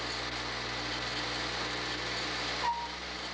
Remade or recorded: recorded